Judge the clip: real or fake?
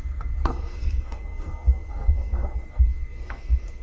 fake